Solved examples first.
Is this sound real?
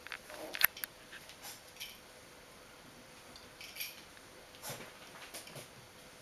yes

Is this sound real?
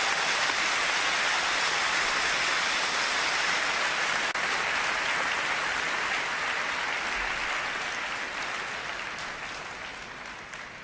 yes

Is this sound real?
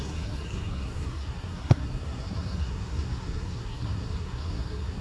no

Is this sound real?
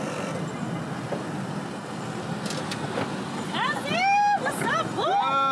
yes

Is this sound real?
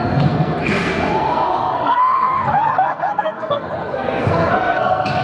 no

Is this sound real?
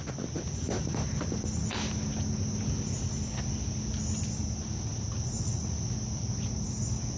yes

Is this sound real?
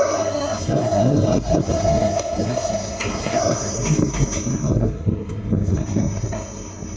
no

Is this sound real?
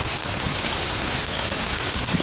no